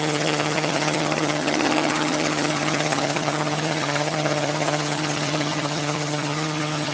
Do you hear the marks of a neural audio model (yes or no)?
yes